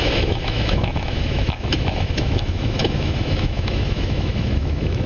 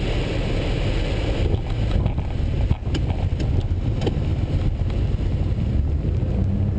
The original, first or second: second